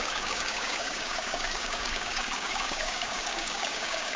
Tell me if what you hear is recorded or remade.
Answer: remade